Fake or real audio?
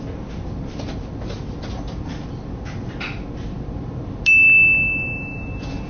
real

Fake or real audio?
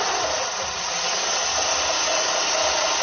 real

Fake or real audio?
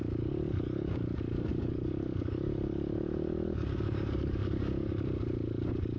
fake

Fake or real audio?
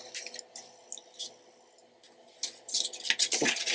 real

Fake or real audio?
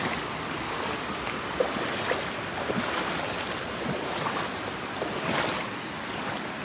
real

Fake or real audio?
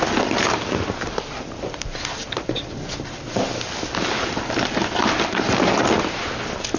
real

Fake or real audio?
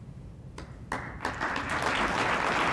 real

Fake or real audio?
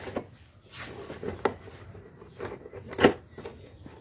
real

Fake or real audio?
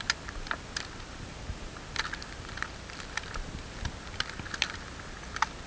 real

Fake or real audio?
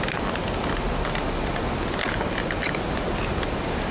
real